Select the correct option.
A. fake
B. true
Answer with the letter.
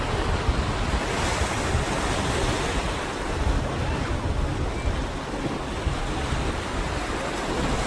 B